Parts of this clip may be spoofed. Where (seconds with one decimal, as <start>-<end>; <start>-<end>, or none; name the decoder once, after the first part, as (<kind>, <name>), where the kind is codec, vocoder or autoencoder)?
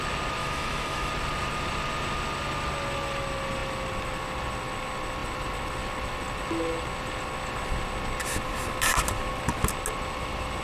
0.4-1.1 (autoencoder, DAC-VAE)